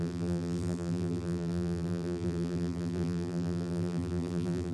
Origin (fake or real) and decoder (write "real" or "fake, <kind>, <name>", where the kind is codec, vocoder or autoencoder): fake, vocoder, BigVGAN v2